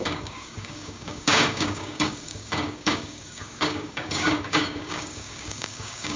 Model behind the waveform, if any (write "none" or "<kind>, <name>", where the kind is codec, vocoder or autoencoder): codec, DAC